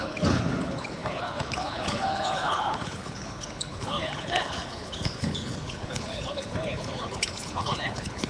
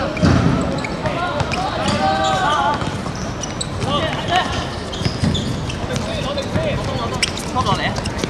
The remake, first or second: first